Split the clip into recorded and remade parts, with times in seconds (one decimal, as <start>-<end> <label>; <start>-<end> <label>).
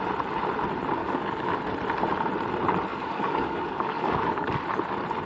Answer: 0.0-1.0 recorded; 1.0-1.6 remade; 1.6-2.9 recorded; 2.9-4.5 remade; 4.5-5.3 recorded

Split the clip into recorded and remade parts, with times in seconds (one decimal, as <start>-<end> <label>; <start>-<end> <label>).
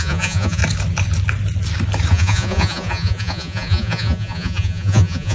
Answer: 0.0-0.6 remade; 0.6-2.1 recorded; 2.1-5.3 remade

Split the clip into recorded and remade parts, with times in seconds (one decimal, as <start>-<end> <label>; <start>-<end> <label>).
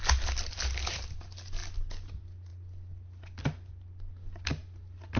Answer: 0.0-5.2 recorded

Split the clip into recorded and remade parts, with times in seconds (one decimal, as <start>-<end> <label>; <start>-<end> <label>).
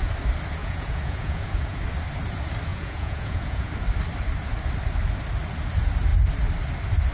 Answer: 0.0-0.6 recorded; 0.6-1.8 remade; 1.8-2.7 recorded; 2.7-3.7 remade; 3.7-7.1 recorded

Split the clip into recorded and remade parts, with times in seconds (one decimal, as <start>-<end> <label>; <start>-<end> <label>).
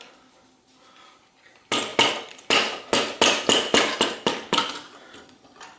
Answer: 0.0-5.8 recorded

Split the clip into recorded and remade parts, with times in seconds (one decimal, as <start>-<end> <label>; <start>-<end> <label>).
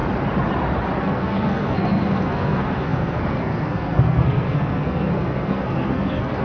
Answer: 0.0-1.0 recorded; 1.0-6.4 remade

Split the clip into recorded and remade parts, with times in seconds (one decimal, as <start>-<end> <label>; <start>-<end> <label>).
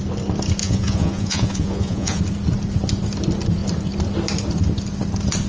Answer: 0.0-0.6 recorded; 0.6-2.2 remade; 2.2-5.5 recorded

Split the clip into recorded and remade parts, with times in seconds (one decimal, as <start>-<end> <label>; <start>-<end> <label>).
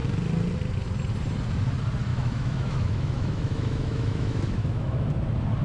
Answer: 0.0-2.1 recorded; 2.1-5.1 remade; 5.1-5.6 recorded